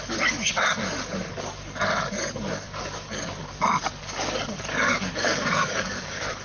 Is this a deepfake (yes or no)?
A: yes